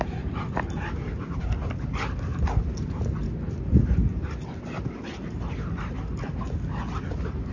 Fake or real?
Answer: real